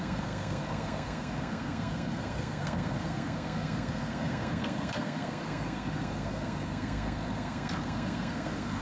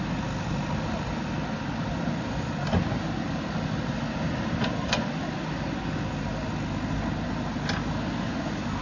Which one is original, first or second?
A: second